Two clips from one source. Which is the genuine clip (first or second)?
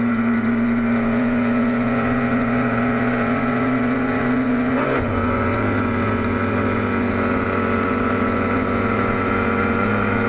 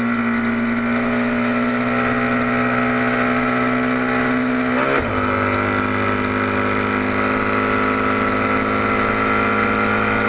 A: second